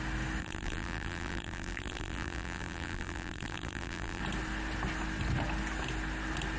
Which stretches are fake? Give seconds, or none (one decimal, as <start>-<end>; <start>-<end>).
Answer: 0.4-4.2